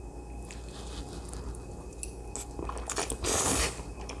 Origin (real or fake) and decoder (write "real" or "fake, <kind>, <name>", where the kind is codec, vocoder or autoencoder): real